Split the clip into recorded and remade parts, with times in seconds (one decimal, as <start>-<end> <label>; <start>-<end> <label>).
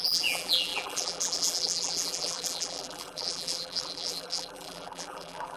0.0-5.6 remade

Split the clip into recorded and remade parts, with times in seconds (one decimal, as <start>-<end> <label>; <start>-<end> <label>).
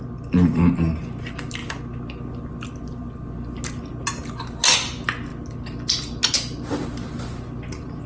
0.0-8.1 recorded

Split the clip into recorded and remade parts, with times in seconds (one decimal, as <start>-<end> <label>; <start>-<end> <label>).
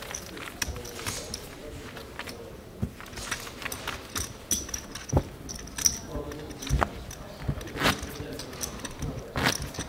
0.0-1.6 recorded; 1.6-3.6 remade; 3.6-9.9 recorded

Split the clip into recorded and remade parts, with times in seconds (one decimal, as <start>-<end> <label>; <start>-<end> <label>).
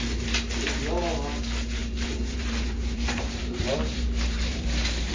0.0-1.8 recorded; 1.8-5.1 remade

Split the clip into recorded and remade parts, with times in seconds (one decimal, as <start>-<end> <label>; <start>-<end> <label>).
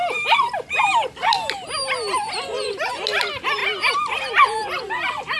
0.0-0.8 remade; 0.8-2.1 recorded; 2.1-3.2 remade; 3.2-5.4 recorded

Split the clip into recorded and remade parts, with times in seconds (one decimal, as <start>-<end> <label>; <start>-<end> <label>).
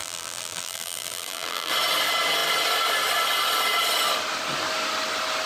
0.0-1.7 remade; 1.7-5.5 recorded